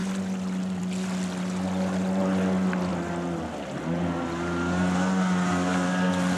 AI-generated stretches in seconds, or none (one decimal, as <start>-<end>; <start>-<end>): none